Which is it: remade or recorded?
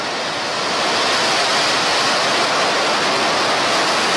recorded